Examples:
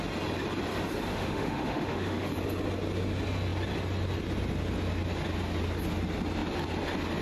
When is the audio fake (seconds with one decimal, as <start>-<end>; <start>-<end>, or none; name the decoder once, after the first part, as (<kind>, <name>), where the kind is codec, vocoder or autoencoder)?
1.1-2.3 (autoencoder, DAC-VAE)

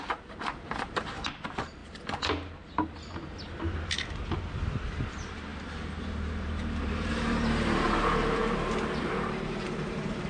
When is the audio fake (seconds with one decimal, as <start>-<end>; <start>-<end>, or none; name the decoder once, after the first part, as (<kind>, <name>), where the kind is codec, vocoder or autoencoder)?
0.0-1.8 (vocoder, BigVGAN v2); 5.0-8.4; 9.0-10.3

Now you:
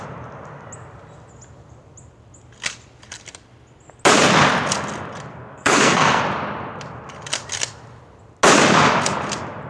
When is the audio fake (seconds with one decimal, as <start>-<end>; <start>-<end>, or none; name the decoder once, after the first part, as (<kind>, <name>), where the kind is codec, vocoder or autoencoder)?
5.3-6.2 (codec, SNAC)

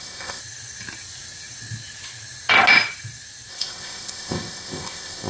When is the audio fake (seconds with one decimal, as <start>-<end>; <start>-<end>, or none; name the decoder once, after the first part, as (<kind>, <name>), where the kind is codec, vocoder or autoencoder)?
0.0-0.4 (codec, ZipCodec); 3.5-5.3

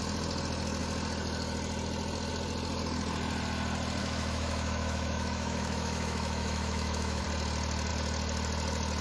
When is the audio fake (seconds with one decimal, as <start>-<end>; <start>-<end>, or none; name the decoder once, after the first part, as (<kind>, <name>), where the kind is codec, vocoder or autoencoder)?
4.0-7.2 (autoencoder, DAC-VAE)